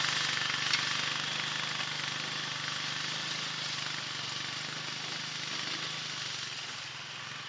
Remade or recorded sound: recorded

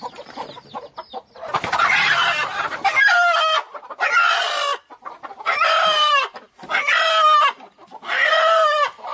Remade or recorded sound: recorded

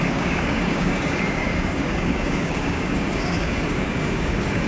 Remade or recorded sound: remade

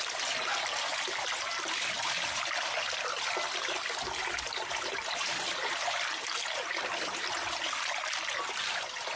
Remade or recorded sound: recorded